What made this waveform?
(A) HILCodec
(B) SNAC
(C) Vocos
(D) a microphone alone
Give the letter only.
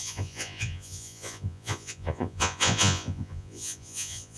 C